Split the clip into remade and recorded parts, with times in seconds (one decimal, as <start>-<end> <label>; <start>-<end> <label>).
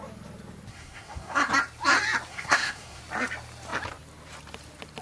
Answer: 0.0-0.7 recorded; 0.7-1.5 remade; 1.5-2.3 recorded; 2.3-3.0 remade; 3.0-5.0 recorded